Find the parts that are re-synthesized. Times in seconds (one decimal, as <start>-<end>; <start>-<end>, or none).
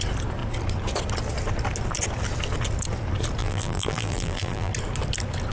3.4-4.7